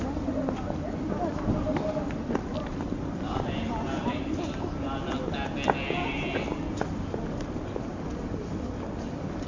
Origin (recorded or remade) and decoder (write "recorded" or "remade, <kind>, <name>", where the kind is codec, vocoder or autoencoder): recorded